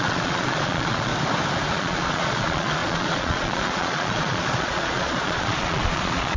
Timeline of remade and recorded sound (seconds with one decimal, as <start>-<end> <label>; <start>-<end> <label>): 0.0-1.1 remade; 1.1-1.7 recorded; 1.7-6.4 remade